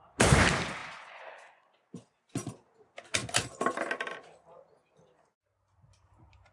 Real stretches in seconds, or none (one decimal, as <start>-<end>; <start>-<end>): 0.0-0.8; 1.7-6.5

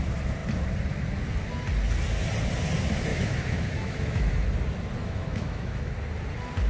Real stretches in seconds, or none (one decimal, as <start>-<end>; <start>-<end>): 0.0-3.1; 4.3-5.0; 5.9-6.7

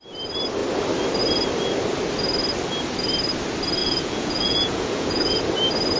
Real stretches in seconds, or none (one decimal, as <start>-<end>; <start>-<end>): 0.0-3.8; 5.4-6.0

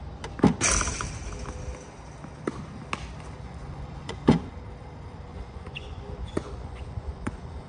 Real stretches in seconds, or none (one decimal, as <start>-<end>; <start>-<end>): 0.0-3.4; 4.5-5.3

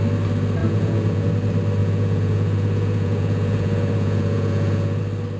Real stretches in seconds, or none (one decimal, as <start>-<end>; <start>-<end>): 0.0-0.6; 1.3-1.8; 5.0-5.4